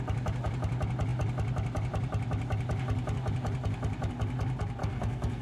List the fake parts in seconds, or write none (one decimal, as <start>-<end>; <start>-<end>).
4.8-5.4